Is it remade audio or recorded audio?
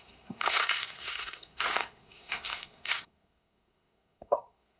remade